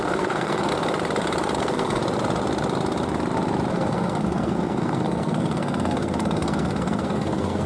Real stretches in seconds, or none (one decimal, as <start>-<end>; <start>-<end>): 0.7-1.6; 2.0-3.7